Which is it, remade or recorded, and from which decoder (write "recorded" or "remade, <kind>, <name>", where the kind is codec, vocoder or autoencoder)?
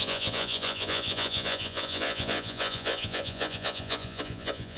remade, vocoder, Vocos